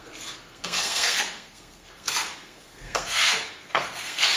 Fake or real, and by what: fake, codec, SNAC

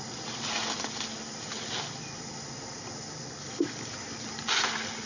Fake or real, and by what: real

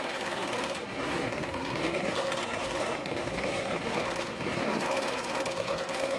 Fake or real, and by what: fake, codec, SNAC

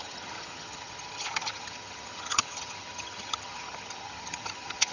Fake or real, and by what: fake, vocoder, HiFi-GAN